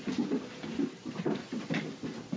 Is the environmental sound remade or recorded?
recorded